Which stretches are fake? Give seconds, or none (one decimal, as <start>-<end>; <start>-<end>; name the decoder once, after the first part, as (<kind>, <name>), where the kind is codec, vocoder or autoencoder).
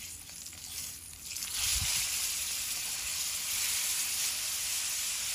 0.0-5.3 (vocoder, BigVGAN v2)